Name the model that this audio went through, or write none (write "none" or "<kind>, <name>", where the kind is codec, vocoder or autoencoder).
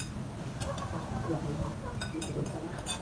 none